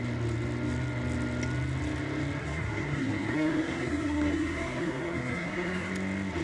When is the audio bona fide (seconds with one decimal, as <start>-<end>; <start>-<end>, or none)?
0.0-2.4; 5.9-6.4